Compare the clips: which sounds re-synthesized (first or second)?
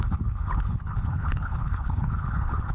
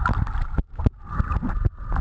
first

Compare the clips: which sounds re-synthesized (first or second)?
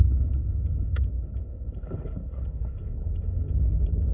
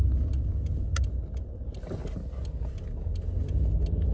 first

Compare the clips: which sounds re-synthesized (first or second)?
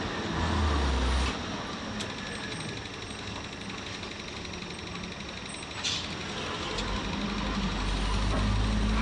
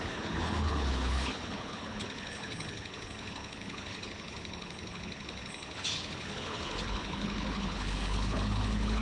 second